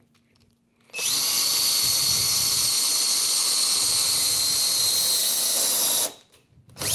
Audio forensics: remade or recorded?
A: recorded